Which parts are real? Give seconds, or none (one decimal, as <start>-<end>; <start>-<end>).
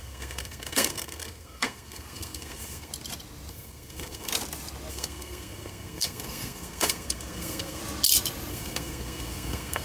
2.9-3.5; 4.3-4.9; 7.8-8.5